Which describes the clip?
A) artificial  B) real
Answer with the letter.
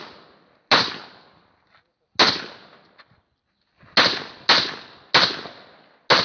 B